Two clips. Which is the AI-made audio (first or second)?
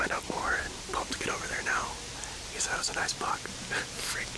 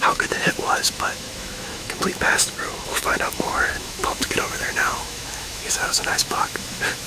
second